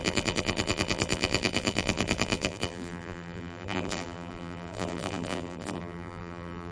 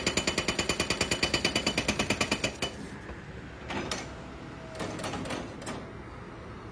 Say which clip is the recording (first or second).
second